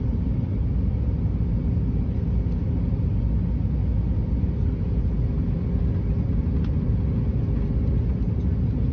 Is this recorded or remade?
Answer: recorded